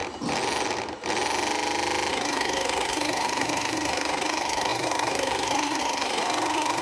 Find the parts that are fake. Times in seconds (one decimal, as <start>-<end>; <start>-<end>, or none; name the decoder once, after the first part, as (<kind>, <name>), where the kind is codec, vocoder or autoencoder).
2.1-6.8 (codec, SNAC)